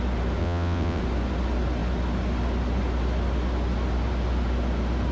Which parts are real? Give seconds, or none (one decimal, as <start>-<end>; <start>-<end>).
0.0-0.4; 1.0-5.1